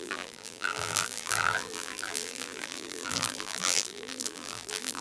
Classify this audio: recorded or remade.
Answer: remade